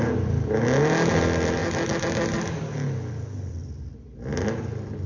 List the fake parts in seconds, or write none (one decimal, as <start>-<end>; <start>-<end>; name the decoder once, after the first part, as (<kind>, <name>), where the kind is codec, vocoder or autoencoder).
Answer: none